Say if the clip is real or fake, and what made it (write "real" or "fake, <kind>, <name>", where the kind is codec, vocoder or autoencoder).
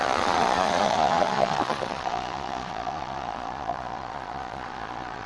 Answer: fake, vocoder, Vocos